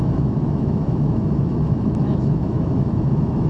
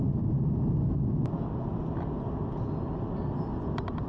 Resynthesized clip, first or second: first